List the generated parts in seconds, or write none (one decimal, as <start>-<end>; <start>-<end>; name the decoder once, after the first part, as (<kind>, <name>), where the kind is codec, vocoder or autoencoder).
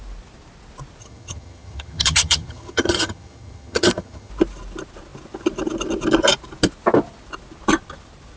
1.0-4.3 (vocoder, HiFi-GAN)